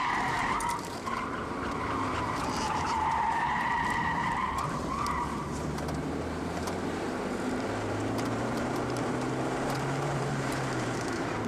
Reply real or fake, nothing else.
fake